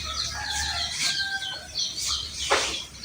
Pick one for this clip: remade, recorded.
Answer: recorded